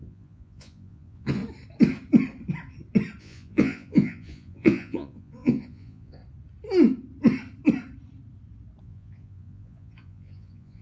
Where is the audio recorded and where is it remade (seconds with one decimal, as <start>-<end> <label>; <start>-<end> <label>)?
0.0-1.4 remade; 1.4-3.2 recorded; 3.2-6.2 remade; 6.2-8.8 recorded; 8.8-10.8 remade

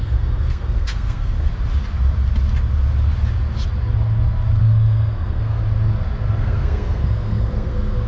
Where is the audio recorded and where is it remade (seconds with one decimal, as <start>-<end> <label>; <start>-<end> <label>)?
0.0-1.5 remade; 1.5-4.6 recorded; 4.6-5.6 remade; 5.6-6.4 recorded; 6.4-8.1 remade

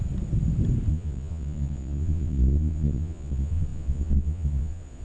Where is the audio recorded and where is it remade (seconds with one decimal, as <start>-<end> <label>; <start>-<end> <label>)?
0.0-0.9 recorded; 0.9-5.0 remade